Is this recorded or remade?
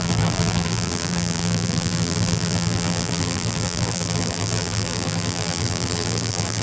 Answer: remade